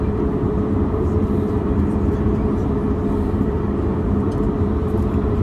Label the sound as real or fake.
fake